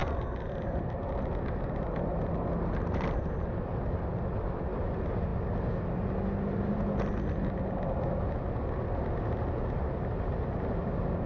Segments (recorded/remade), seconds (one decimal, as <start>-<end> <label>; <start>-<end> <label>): 0.0-11.3 recorded